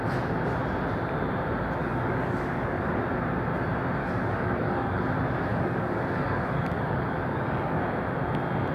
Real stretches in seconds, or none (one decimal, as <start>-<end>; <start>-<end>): 0.0-1.8; 2.9-4.0; 5.0-5.5; 7.8-8.7